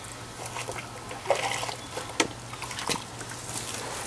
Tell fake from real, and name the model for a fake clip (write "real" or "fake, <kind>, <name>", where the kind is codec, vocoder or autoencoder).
real